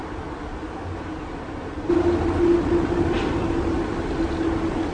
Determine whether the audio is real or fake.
real